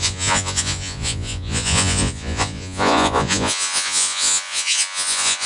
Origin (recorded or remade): remade